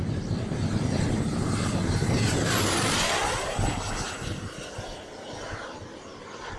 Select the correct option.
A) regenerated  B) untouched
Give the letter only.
B